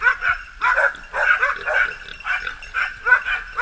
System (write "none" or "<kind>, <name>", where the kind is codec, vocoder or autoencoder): none